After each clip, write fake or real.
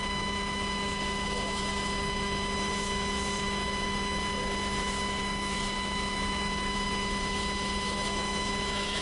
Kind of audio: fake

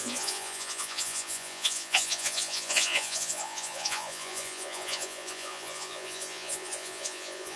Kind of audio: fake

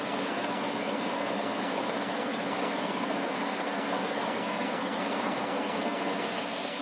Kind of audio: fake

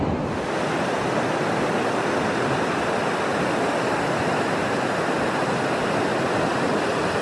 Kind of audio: real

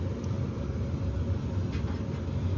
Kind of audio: real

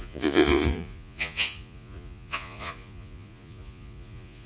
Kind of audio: fake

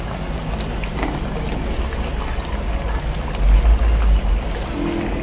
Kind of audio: real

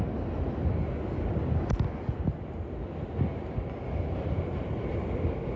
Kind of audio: real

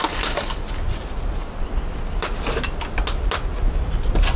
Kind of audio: real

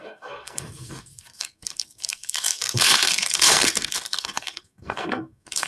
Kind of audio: fake